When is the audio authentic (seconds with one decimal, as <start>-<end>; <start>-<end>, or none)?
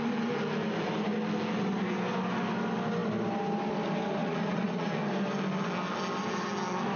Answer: 0.0-4.2; 5.0-7.0